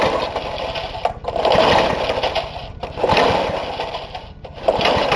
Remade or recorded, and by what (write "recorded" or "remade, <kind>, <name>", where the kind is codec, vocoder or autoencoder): recorded